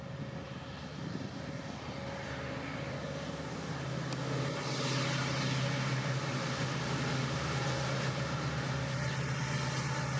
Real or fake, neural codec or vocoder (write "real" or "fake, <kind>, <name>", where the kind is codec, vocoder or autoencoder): real